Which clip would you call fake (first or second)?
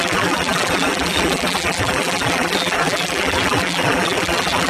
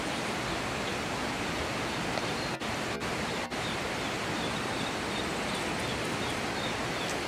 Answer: first